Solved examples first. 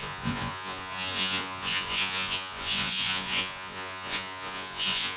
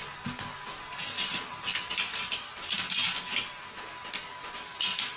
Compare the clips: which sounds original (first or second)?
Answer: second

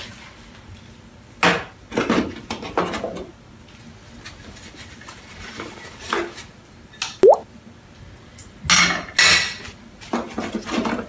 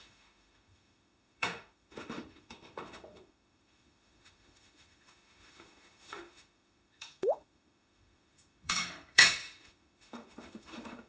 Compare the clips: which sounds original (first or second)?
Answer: first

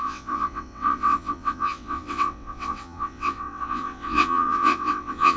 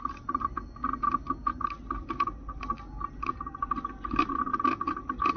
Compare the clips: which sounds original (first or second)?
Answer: second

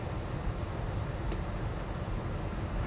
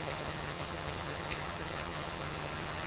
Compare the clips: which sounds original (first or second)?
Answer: first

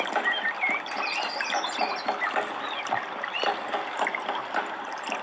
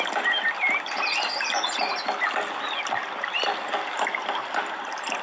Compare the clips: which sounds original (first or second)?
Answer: second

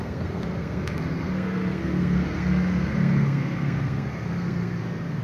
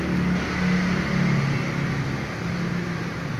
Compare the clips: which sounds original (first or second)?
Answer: second